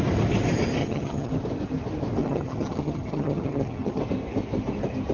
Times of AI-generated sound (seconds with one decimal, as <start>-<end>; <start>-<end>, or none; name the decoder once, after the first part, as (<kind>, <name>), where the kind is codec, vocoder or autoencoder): 0.8-1.3 (vocoder, HiFi-GAN); 2.2-4.0